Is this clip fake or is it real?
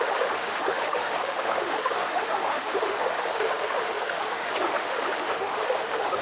fake